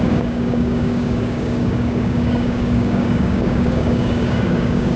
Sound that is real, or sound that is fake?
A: fake